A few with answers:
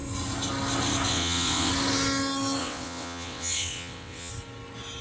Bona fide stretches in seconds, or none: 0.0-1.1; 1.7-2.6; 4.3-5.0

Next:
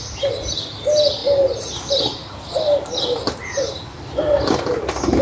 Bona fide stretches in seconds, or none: 0.0-5.2